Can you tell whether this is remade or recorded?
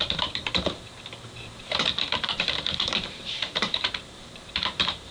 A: remade